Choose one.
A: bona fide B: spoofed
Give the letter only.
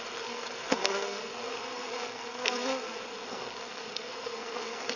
B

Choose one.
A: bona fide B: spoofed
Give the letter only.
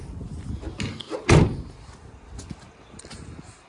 A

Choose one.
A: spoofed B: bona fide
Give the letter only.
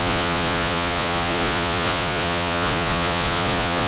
A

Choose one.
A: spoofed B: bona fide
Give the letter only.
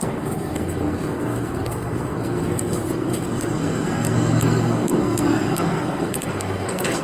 A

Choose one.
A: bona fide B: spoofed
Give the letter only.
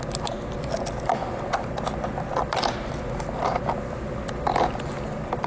A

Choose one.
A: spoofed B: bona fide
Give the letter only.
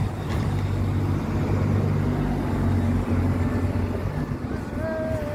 B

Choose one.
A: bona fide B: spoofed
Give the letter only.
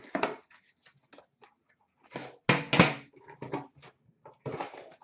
A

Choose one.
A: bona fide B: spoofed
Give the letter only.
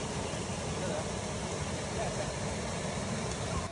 A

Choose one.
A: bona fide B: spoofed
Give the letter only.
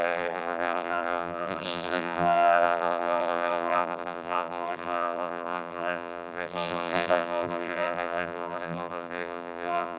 B